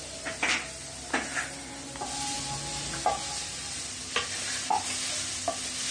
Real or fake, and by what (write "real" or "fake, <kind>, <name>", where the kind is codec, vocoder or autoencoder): real